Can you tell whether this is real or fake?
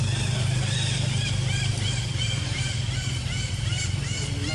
fake